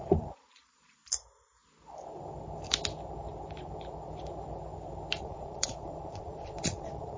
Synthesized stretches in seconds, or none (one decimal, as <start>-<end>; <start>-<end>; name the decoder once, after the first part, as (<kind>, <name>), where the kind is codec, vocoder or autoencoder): 0.0-1.0 (vocoder, Vocos); 5.2-7.2